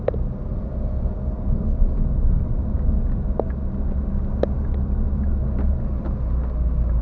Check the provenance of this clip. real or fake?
real